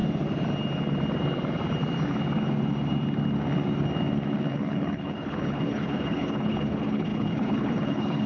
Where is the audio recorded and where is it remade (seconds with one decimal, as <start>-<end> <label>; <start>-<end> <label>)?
0.0-4.5 recorded; 4.5-8.3 remade